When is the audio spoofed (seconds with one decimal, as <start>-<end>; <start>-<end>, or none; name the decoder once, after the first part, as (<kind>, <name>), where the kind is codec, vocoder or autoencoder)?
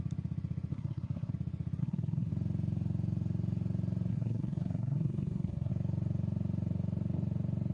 0.7-1.3 (codec, SNAC); 1.8-2.3; 4.1-5.7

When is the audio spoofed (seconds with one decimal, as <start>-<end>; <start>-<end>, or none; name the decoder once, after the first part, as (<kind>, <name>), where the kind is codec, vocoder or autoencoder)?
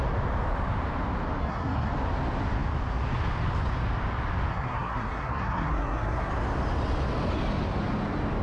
1.4-1.9 (codec, SNAC); 4.5-6.3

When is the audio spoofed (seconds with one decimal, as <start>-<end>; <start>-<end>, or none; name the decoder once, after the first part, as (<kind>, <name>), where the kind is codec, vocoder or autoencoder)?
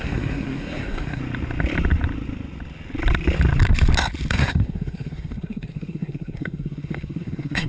0.0-1.2 (codec, SNAC); 4.3-7.7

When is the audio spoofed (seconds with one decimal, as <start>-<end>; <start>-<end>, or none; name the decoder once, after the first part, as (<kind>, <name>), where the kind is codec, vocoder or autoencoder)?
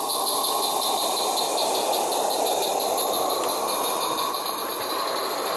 none